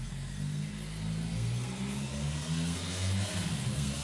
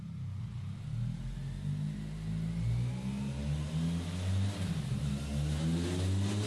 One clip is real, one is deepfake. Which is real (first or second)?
second